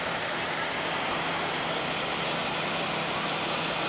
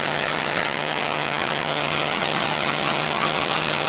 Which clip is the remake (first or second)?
second